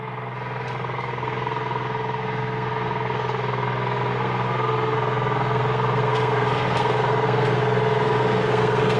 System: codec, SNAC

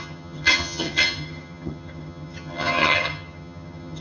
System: vocoder, HiFi-GAN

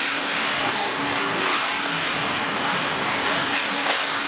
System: codec, DAC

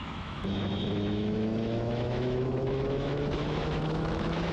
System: autoencoder, DAC-VAE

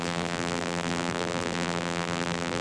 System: vocoder, BigVGAN v2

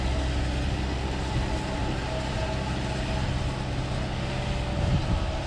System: none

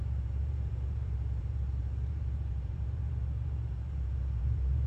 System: vocoder, BigVGAN v2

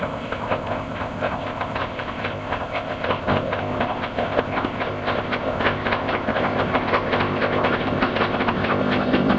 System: codec, ZipCodec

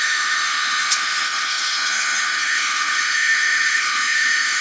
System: codec, HILCodec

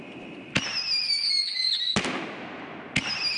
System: none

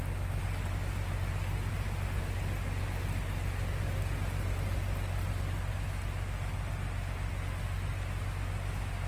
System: none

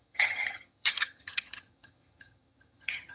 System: vocoder, HiFi-GAN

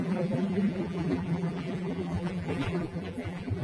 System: vocoder, BigVGAN v2